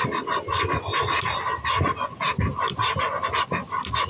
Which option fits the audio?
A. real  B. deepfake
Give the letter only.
A